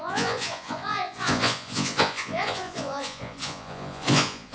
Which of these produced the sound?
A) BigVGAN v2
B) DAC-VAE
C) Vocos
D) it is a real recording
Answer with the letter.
C